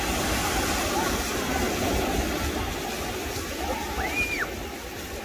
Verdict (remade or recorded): recorded